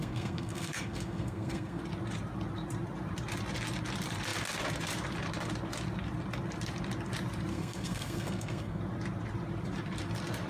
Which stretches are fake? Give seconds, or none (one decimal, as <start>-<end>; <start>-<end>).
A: 0.0-1.8; 7.5-8.8